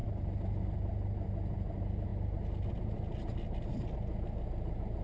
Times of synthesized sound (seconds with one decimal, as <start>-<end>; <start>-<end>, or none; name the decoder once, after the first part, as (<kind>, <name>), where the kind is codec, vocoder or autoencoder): none